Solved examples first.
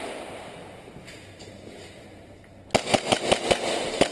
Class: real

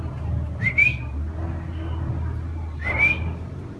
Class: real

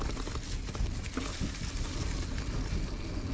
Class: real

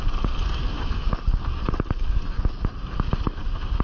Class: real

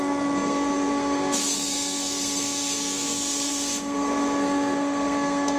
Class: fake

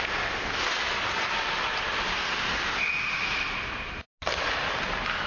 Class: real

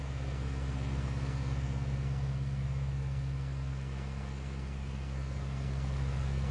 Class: fake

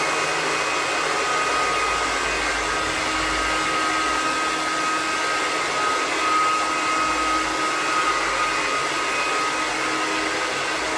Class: real